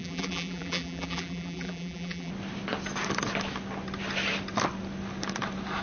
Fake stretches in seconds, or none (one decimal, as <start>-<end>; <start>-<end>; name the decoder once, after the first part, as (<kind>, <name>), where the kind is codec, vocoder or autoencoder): 0.0-2.3 (vocoder, BigVGAN v2)